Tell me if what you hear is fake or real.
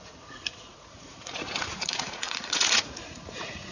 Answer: fake